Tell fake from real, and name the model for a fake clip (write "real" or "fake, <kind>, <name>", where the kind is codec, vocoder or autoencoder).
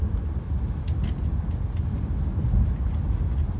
real